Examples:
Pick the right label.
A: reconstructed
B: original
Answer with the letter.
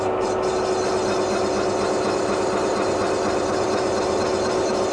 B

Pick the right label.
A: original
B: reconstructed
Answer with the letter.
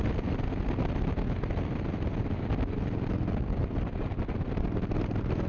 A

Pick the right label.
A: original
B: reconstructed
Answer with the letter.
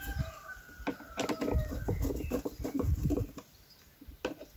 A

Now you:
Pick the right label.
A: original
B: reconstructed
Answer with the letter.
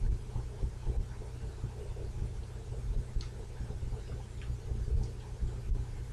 A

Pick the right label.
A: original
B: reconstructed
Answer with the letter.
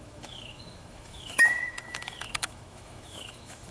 B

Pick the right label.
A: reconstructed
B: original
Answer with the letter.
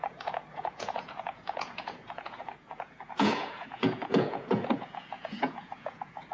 A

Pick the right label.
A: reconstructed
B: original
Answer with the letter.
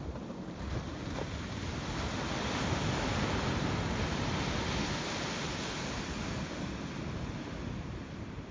B